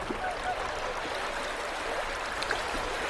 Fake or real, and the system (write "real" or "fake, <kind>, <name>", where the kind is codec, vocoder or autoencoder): real